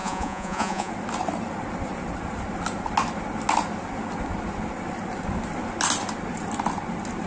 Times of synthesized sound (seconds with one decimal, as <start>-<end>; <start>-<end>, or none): 0.0-0.9